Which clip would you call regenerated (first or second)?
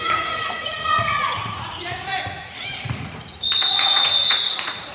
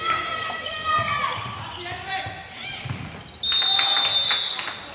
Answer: first